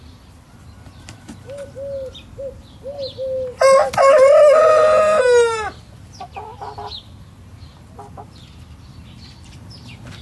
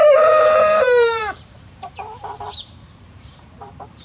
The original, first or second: first